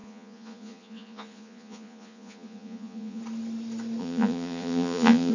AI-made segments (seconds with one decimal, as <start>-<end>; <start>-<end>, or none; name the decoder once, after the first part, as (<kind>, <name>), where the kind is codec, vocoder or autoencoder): 0.0-3.2 (vocoder, Vocos); 4.0-5.3